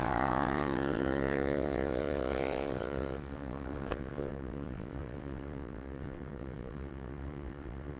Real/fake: fake